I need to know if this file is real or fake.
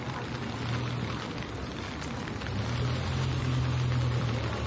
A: real